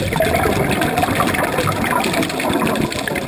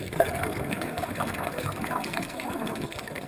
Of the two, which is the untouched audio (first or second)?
first